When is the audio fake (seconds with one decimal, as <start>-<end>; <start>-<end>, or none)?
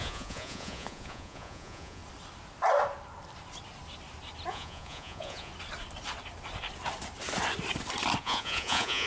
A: 0.0-2.0; 4.5-5.5; 8.2-9.1